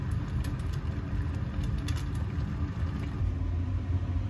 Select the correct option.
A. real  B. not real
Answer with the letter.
A